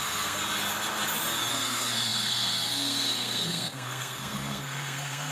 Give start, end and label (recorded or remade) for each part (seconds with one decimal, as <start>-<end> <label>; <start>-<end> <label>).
0.0-0.4 remade; 0.4-1.5 recorded; 1.5-5.3 remade